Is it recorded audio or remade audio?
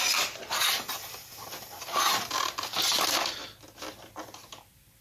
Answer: recorded